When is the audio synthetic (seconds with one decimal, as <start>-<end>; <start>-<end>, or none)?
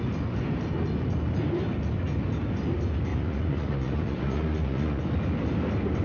3.1-5.0